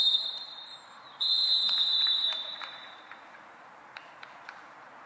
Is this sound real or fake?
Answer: fake